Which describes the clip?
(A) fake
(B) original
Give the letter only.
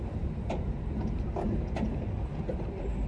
B